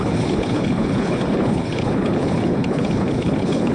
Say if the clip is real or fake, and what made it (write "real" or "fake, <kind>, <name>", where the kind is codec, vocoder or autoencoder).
fake, codec, HILCodec